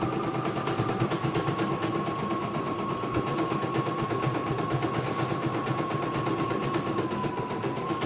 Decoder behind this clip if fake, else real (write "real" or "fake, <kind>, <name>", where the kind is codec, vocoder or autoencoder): real